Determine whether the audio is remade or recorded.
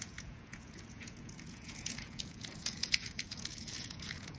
remade